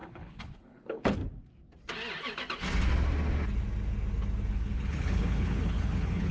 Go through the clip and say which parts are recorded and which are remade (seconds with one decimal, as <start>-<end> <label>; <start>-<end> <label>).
0.0-1.2 remade; 1.2-4.5 recorded; 4.5-6.3 remade